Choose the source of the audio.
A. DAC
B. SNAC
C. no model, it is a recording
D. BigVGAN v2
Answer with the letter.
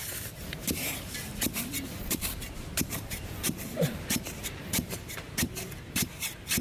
D